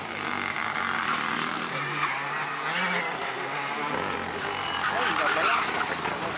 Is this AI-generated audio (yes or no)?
no